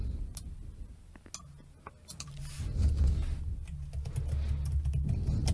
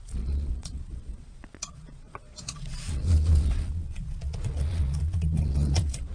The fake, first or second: second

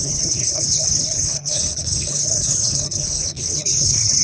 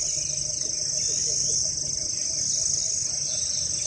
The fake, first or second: first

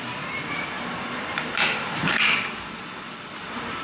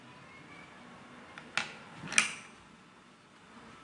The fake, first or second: first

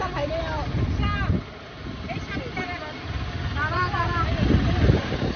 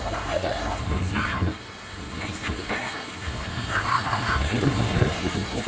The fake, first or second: second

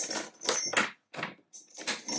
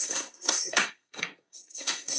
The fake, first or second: second